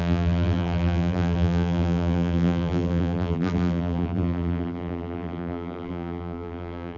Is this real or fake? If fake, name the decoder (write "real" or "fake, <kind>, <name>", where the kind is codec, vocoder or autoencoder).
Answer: fake, vocoder, BigVGAN v2